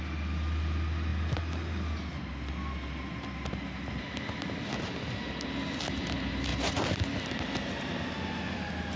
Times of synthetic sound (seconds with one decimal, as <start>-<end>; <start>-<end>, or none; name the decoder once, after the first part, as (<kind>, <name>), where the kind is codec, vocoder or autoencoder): none